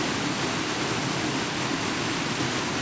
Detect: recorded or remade recorded